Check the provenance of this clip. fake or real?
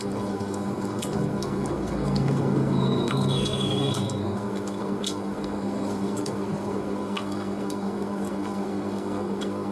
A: fake